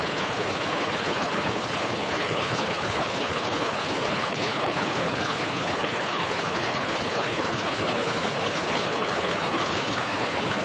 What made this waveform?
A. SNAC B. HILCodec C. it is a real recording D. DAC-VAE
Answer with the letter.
B